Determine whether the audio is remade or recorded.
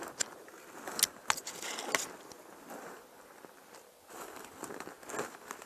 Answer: recorded